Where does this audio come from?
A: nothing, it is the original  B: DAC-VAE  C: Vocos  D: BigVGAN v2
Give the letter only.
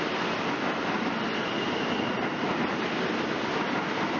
A